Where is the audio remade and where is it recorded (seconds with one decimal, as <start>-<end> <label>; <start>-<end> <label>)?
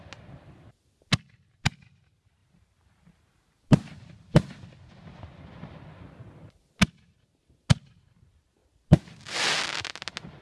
0.0-10.4 recorded